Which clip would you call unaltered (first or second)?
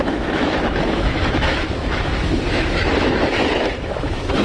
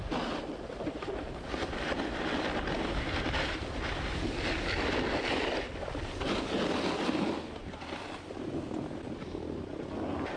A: second